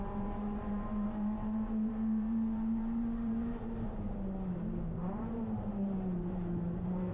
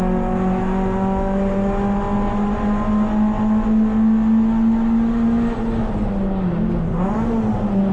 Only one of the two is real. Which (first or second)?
second